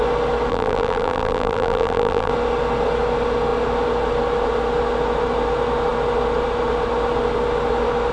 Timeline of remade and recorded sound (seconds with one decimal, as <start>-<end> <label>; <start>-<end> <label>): 0.0-0.5 recorded; 0.5-2.3 remade; 2.3-8.1 recorded